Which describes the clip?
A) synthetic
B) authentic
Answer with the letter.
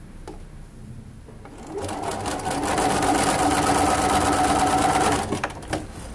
B